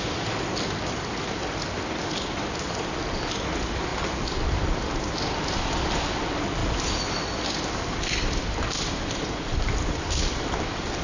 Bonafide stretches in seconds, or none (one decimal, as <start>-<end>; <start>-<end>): 0.0-11.0